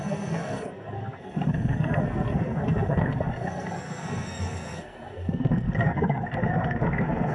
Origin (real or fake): fake